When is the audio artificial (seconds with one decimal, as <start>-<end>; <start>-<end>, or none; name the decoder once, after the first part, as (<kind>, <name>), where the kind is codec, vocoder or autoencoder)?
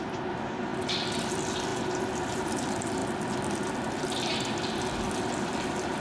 1.7-2.4 (vocoder, BigVGAN v2)